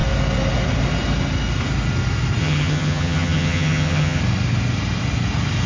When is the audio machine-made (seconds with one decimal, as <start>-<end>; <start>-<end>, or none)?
2.4-4.2